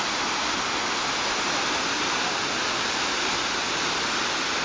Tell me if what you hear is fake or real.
real